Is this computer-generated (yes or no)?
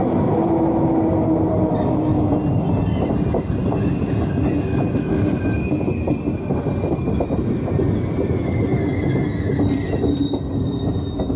no